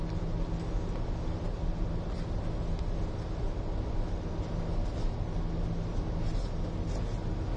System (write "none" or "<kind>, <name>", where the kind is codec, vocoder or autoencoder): none